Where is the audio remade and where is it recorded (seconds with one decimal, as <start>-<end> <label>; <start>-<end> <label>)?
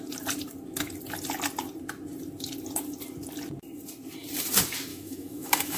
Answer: 0.0-4.9 recorded; 4.9-5.8 remade